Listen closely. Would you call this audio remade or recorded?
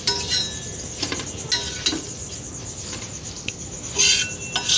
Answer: recorded